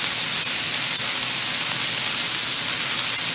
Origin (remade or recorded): recorded